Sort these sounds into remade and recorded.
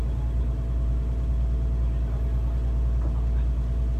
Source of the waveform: recorded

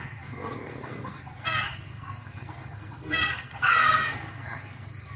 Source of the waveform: remade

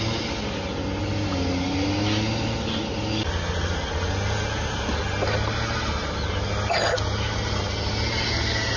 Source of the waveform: recorded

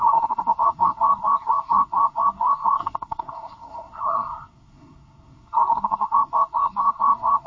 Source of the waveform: remade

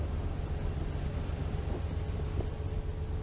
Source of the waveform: recorded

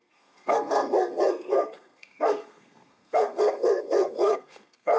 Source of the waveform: remade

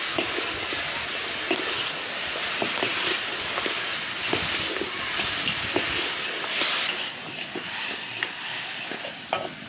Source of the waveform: recorded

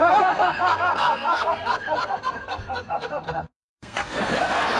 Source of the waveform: remade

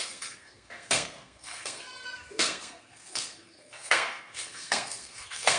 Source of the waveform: remade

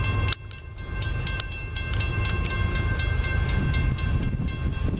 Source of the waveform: recorded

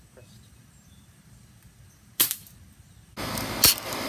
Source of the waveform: recorded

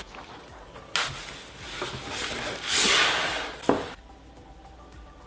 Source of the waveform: recorded